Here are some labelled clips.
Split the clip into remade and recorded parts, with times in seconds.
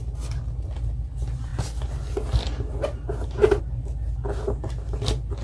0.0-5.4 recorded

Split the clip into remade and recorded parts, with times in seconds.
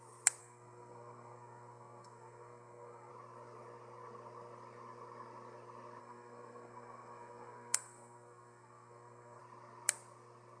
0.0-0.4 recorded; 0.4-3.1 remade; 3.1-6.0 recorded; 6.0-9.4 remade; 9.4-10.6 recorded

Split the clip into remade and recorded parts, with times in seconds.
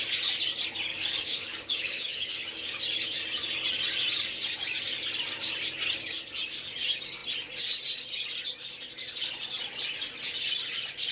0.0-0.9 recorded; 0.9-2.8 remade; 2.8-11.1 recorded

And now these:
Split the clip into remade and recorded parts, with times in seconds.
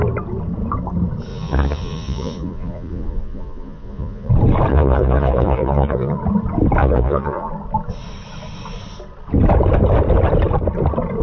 0.0-1.3 recorded; 1.3-4.3 remade; 4.3-4.7 recorded; 4.7-6.2 remade; 6.2-6.8 recorded; 6.8-7.5 remade; 7.5-11.2 recorded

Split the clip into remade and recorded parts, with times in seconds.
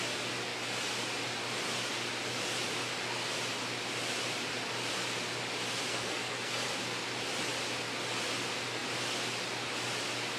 0.0-5.9 recorded; 5.9-6.7 remade; 6.7-10.4 recorded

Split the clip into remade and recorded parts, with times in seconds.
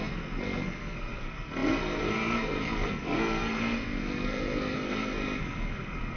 0.0-6.2 remade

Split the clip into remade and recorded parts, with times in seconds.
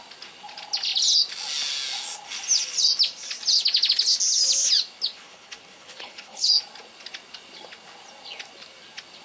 0.0-5.1 recorded; 5.1-6.5 remade; 6.5-9.2 recorded